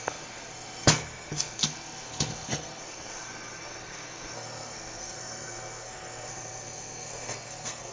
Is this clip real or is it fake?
fake